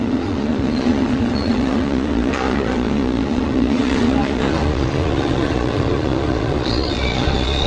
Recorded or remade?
remade